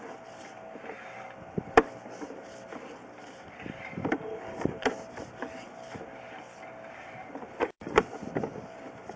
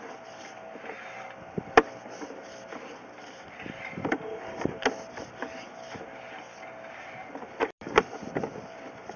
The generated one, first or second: first